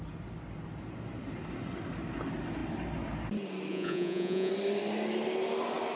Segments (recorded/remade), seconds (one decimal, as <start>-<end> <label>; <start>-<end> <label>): 0.0-3.7 recorded; 3.7-4.5 remade; 4.5-6.0 recorded